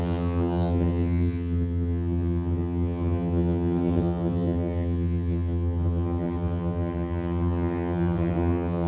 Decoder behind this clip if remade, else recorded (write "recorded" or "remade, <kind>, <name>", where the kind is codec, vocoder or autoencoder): remade, vocoder, HiFi-GAN